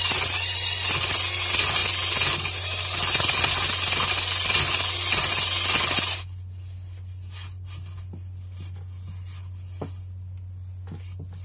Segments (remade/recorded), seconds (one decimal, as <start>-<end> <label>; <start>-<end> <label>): 0.0-11.4 recorded